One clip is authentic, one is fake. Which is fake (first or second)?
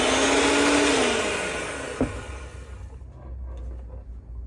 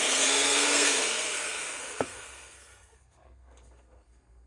second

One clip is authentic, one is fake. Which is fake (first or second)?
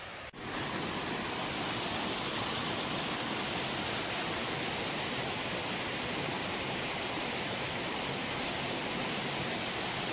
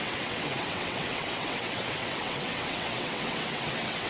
second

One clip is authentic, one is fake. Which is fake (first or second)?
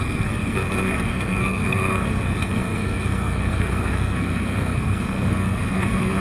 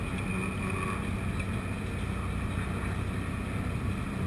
first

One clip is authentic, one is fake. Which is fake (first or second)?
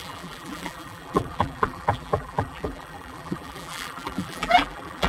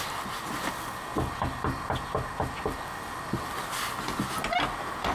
first